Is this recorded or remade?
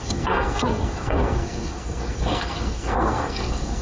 remade